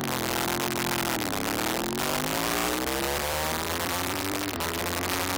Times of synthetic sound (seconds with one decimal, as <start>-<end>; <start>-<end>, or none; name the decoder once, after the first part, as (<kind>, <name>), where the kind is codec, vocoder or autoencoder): 2.6-4.8 (vocoder, BigVGAN v2)